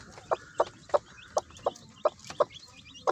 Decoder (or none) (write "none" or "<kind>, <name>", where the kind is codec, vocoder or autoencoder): none